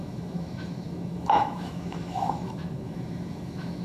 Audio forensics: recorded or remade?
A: remade